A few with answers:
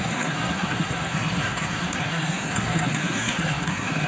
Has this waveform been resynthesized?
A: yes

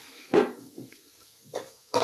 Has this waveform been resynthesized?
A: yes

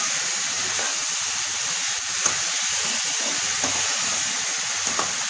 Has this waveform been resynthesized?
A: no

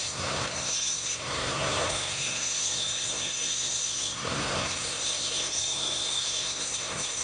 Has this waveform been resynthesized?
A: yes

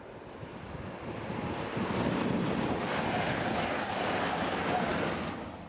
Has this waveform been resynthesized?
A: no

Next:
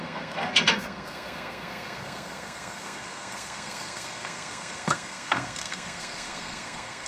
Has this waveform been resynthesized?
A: yes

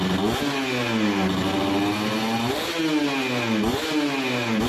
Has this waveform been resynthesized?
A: no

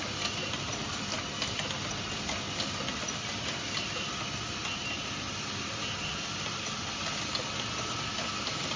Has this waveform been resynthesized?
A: no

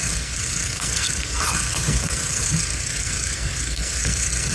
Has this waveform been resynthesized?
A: yes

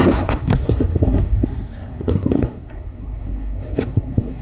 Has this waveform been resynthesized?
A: yes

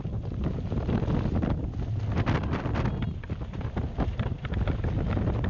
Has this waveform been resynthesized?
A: no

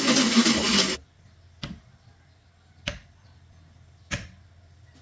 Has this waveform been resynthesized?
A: no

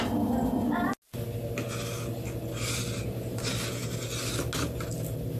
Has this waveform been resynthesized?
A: no